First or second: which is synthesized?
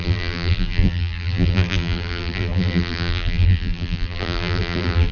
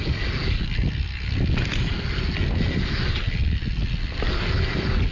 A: first